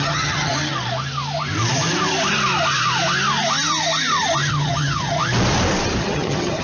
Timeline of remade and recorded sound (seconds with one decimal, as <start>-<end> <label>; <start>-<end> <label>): 0.0-0.5 remade; 0.5-4.5 recorded; 4.5-5.2 remade; 5.2-6.0 recorded; 6.0-6.6 remade